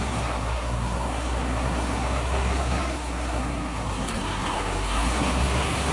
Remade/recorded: remade